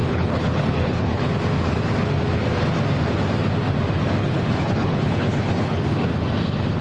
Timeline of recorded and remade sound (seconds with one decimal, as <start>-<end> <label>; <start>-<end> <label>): 0.0-1.3 remade; 1.3-4.2 recorded; 4.2-5.8 remade; 5.8-6.8 recorded